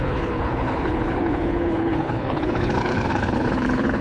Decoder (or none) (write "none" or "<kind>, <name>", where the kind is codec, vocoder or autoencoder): codec, HILCodec